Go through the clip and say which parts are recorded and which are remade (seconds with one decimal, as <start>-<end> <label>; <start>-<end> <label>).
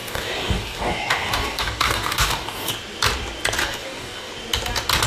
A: 0.0-2.7 remade; 2.7-3.6 recorded; 3.6-4.3 remade; 4.3-5.1 recorded